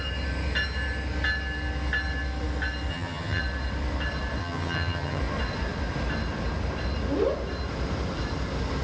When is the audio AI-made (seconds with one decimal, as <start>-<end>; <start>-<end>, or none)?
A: 2.9-3.4; 4.4-5.2